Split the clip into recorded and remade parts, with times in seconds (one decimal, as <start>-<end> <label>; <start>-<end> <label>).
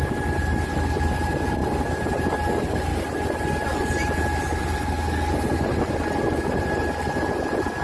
0.0-1.6 recorded; 1.6-2.2 remade; 2.2-7.8 recorded